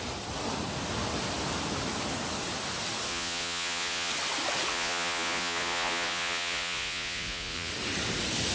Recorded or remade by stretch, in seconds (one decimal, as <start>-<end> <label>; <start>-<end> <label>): 0.0-3.1 recorded; 3.1-4.1 remade; 4.1-4.7 recorded; 4.7-7.7 remade; 7.7-8.5 recorded

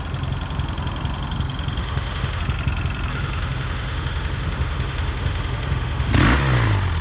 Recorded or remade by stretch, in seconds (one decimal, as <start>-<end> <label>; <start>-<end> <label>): 0.0-1.8 recorded; 1.8-2.4 remade; 2.4-3.1 recorded; 3.1-6.1 remade; 6.1-7.0 recorded

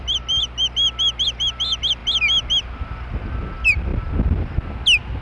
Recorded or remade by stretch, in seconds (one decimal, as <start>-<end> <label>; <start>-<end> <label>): 0.0-5.2 recorded